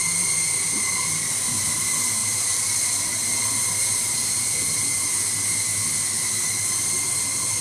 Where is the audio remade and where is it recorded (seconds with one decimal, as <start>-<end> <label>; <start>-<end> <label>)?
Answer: 0.0-7.6 recorded